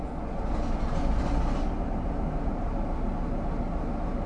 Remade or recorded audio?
recorded